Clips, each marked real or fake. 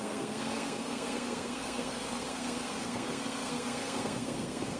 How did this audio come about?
fake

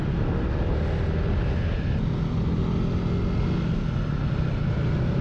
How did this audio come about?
real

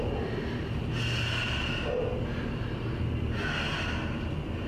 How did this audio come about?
real